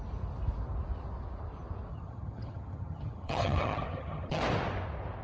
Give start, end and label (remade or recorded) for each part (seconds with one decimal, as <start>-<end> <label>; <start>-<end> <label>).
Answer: 0.0-1.9 recorded; 1.9-4.4 remade; 4.4-5.2 recorded